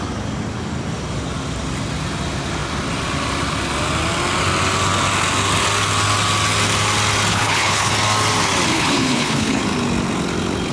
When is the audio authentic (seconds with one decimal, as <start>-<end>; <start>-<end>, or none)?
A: 0.0-7.3; 7.9-8.7; 9.6-10.7